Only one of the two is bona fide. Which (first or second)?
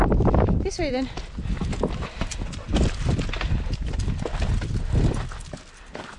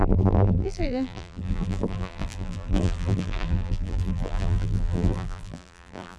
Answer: first